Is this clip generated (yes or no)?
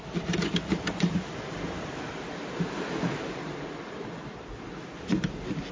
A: no